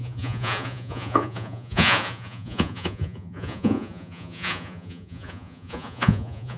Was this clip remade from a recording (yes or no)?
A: yes